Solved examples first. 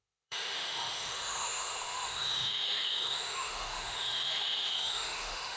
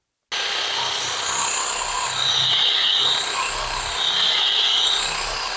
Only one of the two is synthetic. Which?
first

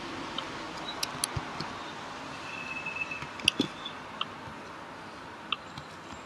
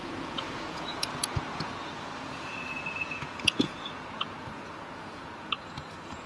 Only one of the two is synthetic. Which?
second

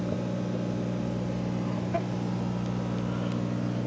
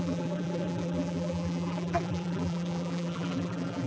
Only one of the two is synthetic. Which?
second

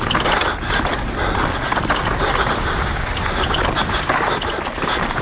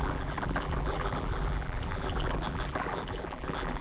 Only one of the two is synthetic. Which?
second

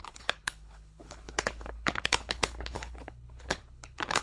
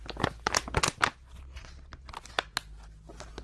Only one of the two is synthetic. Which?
first